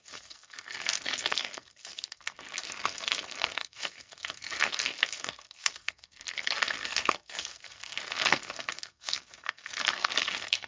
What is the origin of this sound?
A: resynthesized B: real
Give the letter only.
A